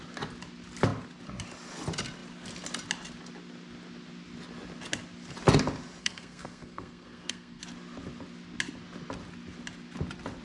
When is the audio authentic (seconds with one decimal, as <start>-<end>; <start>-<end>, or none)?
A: 0.0-6.0; 7.6-10.4